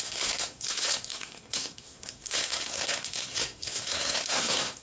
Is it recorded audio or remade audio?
remade